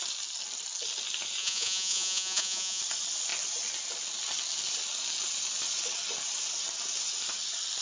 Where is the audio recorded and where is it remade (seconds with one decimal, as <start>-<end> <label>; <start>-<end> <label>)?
0.0-1.4 recorded; 1.4-2.8 remade; 2.8-7.8 recorded

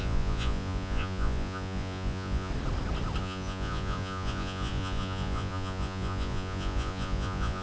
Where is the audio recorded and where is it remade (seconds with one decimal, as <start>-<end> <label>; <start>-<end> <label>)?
0.0-2.5 remade; 2.5-3.2 recorded; 3.2-7.6 remade

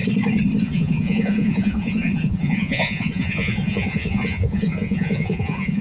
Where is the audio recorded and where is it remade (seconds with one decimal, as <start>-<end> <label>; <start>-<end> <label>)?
0.0-0.6 recorded; 0.6-5.8 remade